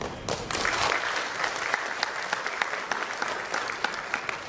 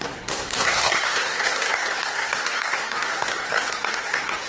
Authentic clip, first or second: first